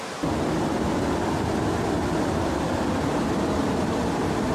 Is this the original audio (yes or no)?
yes